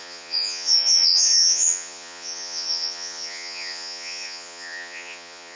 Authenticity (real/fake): fake